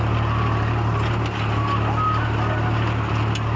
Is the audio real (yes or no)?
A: yes